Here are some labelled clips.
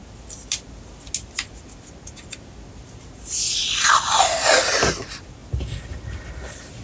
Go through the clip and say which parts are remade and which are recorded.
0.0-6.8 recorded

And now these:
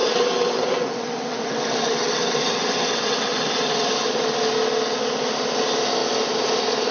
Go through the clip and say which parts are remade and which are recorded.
0.0-3.9 remade; 3.9-6.9 recorded

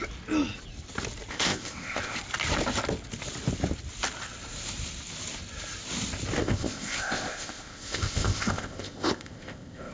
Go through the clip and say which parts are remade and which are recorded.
0.0-1.3 recorded; 1.3-2.2 remade; 2.2-6.4 recorded; 6.4-9.9 remade